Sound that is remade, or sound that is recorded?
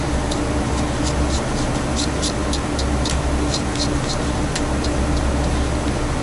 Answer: recorded